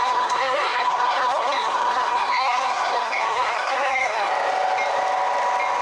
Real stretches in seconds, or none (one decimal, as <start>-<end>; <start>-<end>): 4.3-5.8

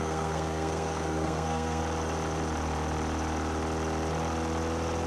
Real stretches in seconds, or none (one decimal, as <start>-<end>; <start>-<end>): 1.8-5.1

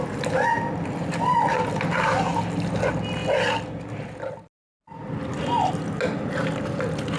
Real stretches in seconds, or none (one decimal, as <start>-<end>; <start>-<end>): 0.0-7.2